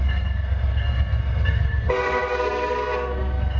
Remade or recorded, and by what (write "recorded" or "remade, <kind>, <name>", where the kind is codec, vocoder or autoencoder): remade, codec, SNAC